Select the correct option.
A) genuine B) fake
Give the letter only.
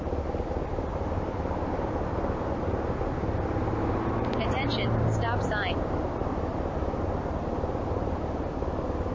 A